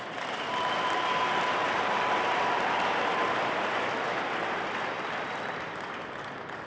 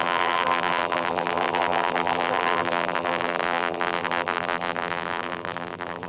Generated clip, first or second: second